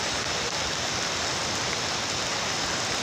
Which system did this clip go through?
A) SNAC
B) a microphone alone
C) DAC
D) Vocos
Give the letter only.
B